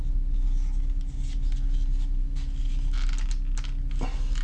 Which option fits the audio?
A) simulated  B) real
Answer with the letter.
B